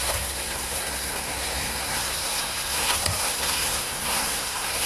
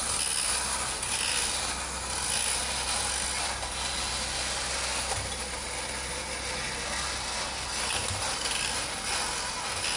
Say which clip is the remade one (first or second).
first